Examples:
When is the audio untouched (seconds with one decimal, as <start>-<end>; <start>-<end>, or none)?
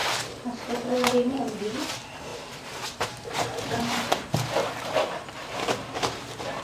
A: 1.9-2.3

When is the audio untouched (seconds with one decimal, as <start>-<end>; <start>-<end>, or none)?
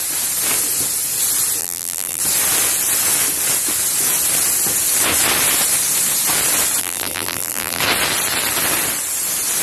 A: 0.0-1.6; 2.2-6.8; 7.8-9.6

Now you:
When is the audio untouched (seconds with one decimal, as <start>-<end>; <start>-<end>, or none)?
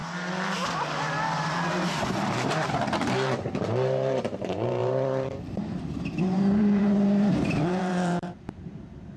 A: 0.0-1.7